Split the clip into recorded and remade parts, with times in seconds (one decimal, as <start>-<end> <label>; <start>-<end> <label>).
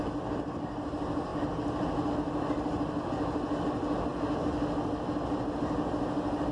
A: 0.0-6.5 recorded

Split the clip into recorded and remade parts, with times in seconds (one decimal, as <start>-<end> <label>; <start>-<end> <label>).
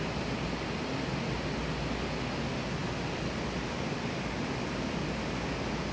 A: 0.0-5.9 recorded